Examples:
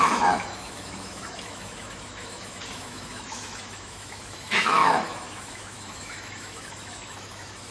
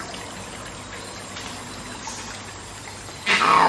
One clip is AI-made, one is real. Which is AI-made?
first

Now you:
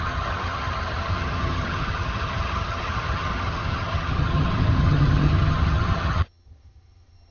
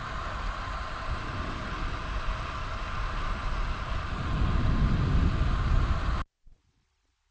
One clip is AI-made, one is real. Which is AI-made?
first